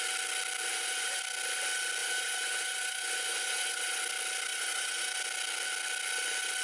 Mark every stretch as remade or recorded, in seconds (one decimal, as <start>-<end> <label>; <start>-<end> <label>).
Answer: 0.0-0.7 recorded; 0.7-1.2 remade; 1.2-2.0 recorded; 2.0-4.0 remade; 4.0-4.5 recorded; 4.5-5.1 remade; 5.1-6.6 recorded